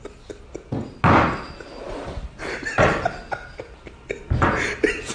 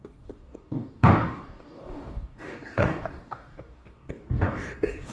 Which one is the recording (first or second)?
first